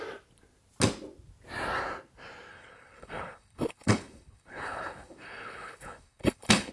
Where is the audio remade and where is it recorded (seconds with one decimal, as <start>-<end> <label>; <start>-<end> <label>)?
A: 0.0-2.5 recorded; 2.5-6.7 remade